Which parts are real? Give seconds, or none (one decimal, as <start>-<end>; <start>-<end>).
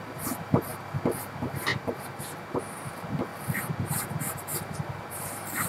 0.7-1.2; 3.3-3.8